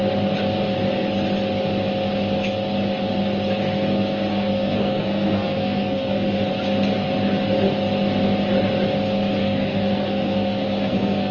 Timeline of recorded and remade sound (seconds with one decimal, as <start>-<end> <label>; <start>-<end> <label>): 0.0-4.3 recorded; 4.3-6.5 remade; 6.5-9.4 recorded; 9.4-11.3 remade